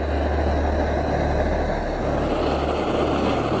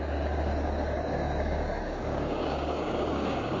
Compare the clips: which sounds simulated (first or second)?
second